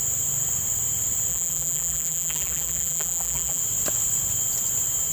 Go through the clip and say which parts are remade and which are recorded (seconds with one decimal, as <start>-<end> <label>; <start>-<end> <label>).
0.0-1.3 recorded; 1.3-3.6 remade; 3.6-5.1 recorded